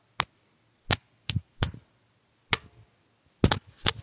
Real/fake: real